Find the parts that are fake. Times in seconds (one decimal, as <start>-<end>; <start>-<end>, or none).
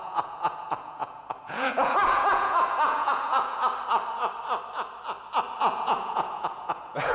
0.0-3.6; 5.7-7.1